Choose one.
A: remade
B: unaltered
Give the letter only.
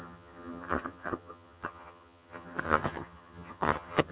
A